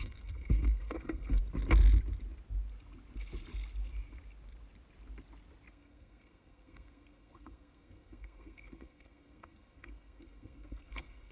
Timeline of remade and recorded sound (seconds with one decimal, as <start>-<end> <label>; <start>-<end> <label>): 0.0-1.4 remade; 1.4-5.7 recorded; 5.7-11.3 remade